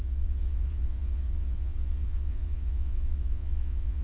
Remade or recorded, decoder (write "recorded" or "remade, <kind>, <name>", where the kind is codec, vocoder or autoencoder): remade, vocoder, Vocos